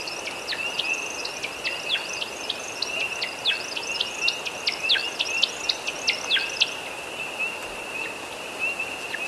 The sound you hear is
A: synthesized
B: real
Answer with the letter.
B